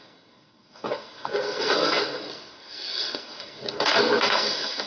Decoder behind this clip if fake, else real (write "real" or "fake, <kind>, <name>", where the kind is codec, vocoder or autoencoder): fake, codec, SNAC